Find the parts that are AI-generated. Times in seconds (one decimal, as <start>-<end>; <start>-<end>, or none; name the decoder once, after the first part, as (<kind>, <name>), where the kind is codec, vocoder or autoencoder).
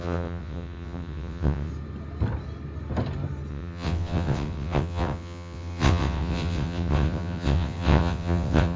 0.0-1.7 (vocoder, WaveNeXt); 3.5-8.8